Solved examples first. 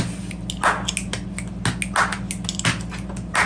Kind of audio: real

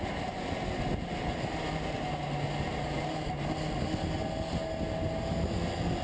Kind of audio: real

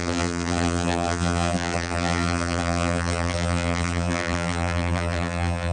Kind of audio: fake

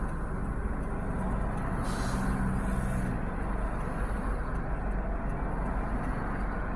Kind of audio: real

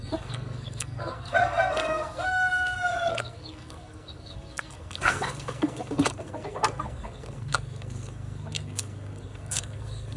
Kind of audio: fake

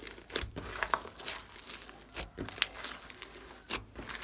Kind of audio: real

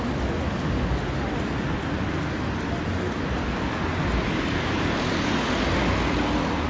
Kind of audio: real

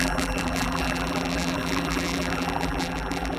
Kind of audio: fake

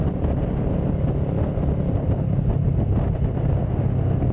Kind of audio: real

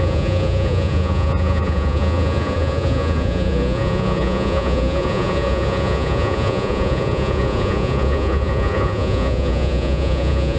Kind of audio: fake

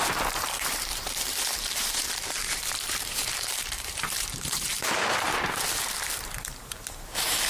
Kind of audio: fake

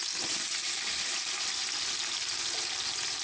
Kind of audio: real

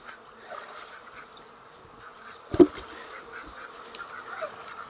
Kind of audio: real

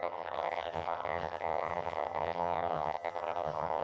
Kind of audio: fake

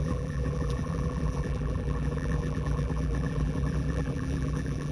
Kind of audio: fake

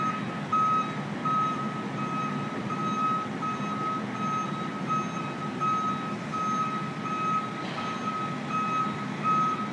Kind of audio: real